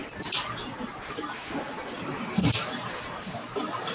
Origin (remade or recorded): remade